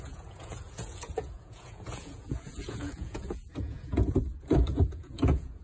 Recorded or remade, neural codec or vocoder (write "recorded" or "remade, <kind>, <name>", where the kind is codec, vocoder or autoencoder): remade, vocoder, Vocos